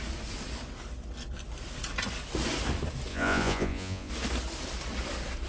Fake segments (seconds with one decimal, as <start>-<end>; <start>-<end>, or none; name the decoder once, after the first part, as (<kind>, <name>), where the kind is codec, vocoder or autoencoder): 3.1-4.1 (vocoder, Vocos)